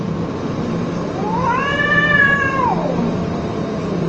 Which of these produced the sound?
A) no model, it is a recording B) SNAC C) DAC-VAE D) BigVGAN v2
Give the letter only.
D